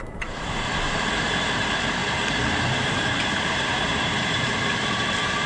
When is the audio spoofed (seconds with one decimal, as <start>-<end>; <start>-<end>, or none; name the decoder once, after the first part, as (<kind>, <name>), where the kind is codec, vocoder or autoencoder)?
0.0-2.0 (vocoder, BigVGAN v2); 2.8-5.5